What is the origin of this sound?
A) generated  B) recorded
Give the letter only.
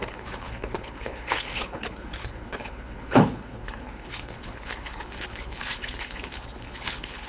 A